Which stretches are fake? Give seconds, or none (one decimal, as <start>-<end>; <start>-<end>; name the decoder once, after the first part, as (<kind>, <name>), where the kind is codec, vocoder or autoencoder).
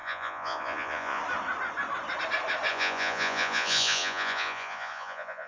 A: 0.0-1.2 (vocoder, Vocos); 2.7-5.5